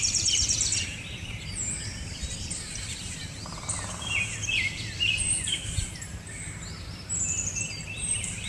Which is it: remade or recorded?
remade